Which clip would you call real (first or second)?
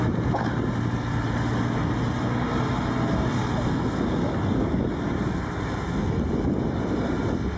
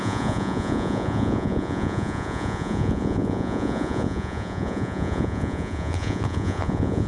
first